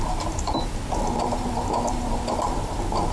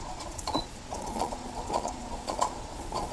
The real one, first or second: first